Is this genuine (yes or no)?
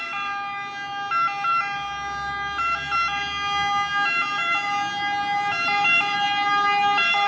yes